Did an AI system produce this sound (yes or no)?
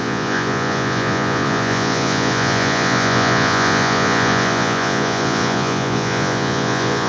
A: yes